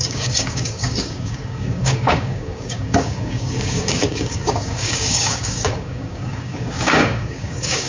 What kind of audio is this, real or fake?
fake